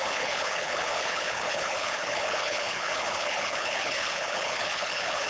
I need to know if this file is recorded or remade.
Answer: remade